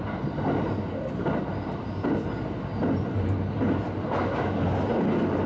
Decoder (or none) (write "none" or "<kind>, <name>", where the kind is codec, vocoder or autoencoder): none